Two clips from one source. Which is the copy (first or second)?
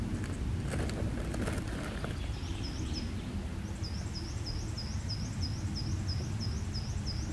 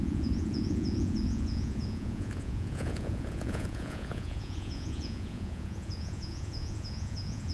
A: second